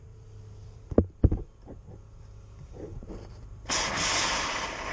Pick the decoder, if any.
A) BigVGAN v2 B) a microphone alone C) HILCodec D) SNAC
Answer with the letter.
A